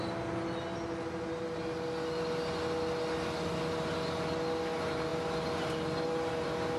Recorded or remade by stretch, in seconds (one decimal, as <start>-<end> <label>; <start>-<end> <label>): 0.0-6.8 recorded